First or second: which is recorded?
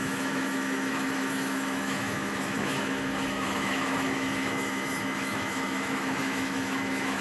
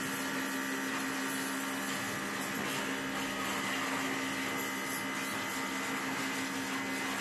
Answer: second